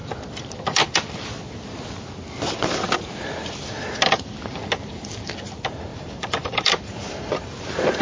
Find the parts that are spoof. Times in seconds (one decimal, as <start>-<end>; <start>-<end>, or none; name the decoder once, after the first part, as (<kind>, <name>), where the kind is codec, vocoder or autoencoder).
5.9-7.3 (vocoder, BigVGAN v2)